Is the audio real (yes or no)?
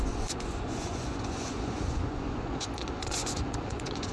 no